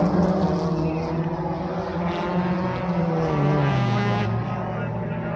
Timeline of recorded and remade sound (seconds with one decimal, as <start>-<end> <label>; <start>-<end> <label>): 0.0-3.7 recorded; 3.7-4.2 remade; 4.2-5.4 recorded